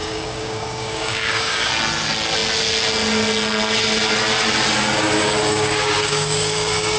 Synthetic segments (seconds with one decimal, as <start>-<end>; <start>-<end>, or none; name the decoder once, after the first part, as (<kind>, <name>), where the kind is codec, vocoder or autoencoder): 0.0-1.7 (codec, DAC); 5.5-7.0